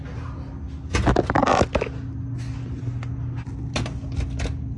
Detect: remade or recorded recorded